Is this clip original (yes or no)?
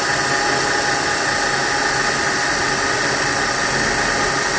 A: yes